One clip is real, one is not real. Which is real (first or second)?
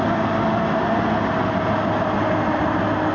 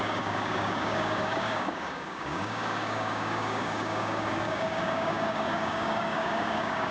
first